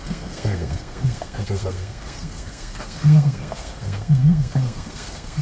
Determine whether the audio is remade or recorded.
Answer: remade